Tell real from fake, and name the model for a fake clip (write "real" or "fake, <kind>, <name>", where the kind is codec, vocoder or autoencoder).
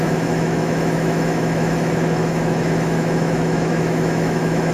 fake, autoencoder, DAC-VAE